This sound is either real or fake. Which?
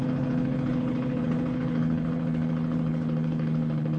fake